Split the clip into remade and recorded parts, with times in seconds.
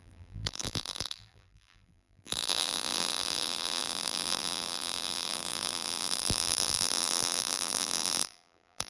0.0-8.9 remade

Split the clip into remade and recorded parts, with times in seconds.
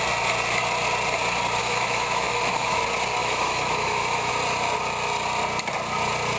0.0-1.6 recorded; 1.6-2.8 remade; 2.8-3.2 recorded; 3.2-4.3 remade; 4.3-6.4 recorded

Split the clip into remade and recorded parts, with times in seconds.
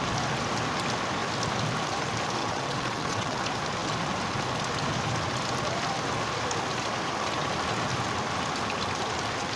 0.0-2.4 recorded; 2.4-3.4 remade; 3.4-9.6 recorded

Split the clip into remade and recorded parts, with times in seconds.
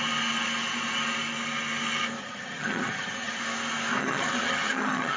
0.0-2.2 recorded; 2.2-3.4 remade; 3.4-4.0 recorded; 4.0-5.2 remade